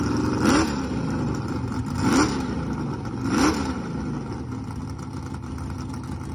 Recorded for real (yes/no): yes